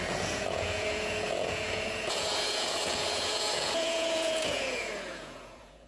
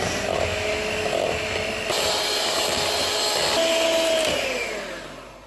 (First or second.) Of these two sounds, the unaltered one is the second